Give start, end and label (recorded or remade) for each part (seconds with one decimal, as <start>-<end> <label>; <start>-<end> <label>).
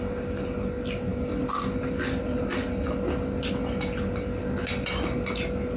0.0-5.8 recorded